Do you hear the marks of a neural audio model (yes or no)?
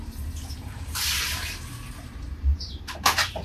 yes